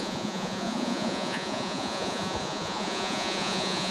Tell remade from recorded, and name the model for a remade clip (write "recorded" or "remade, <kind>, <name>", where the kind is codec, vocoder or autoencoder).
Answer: remade, vocoder, Vocos